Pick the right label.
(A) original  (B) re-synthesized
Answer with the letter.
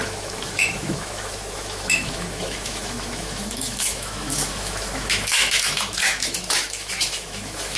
B